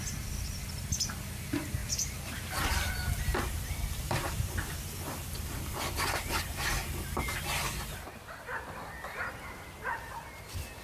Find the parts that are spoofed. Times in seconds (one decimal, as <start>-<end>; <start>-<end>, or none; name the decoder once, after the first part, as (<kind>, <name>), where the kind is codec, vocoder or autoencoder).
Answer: 1.8-6.0 (vocoder, BigVGAN v2)